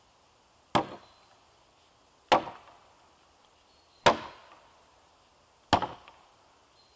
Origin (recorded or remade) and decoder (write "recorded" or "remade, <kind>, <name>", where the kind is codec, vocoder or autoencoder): recorded